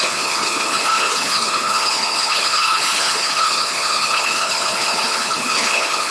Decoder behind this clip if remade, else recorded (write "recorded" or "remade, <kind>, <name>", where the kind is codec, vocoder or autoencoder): remade, codec, HILCodec